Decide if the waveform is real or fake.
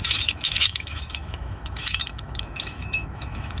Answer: fake